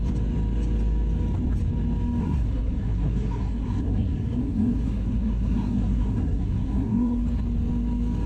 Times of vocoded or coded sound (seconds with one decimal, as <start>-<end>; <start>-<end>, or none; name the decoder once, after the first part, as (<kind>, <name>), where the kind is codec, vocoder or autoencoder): 2.2-7.2 (codec, SNAC)